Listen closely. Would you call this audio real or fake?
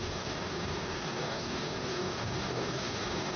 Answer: fake